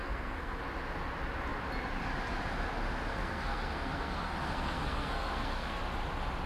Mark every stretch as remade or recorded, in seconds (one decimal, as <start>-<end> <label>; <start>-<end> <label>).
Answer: 0.0-0.6 remade; 0.6-3.1 recorded; 3.1-5.8 remade; 5.8-6.5 recorded